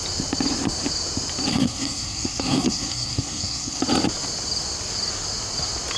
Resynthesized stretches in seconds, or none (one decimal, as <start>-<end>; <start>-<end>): 1.5-3.8